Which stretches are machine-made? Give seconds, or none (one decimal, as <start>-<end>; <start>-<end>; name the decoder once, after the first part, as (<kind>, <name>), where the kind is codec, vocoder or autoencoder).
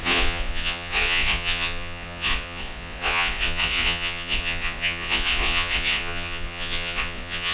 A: 0.0-7.5 (vocoder, Vocos)